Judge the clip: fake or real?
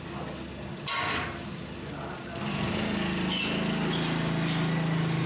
real